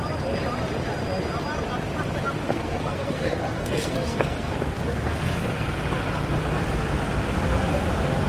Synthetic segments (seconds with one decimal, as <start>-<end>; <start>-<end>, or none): 2.5-5.8